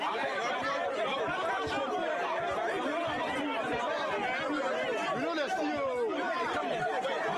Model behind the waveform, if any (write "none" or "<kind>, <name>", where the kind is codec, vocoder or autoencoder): none